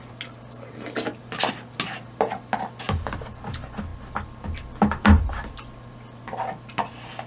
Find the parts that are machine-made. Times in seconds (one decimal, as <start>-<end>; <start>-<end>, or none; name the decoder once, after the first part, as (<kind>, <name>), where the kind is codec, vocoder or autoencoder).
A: none